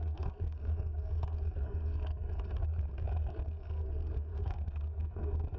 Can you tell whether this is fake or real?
fake